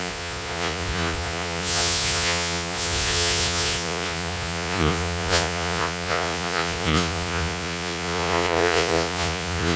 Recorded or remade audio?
remade